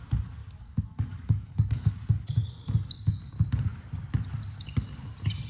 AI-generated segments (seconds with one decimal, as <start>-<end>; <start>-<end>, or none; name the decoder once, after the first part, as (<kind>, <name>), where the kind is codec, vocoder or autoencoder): 0.4-1.9 (codec, DAC); 2.4-3.3